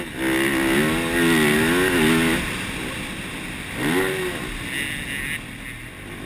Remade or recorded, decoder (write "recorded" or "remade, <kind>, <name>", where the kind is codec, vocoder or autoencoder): recorded